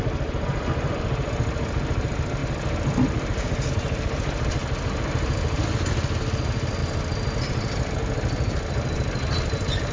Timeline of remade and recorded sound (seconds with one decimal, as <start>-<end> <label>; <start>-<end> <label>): 0.0-9.9 recorded